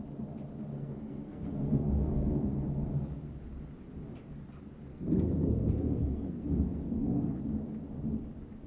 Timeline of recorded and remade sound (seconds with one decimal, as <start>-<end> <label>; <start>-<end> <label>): 0.0-0.7 recorded; 0.7-3.3 remade; 3.3-4.9 recorded; 4.9-7.4 remade; 7.4-8.7 recorded